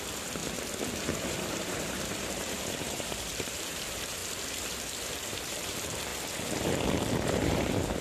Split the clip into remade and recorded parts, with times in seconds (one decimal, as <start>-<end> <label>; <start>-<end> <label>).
0.0-0.4 remade; 0.4-1.3 recorded; 1.3-4.2 remade; 4.2-5.1 recorded; 5.1-6.1 remade; 6.1-7.1 recorded; 7.1-8.0 remade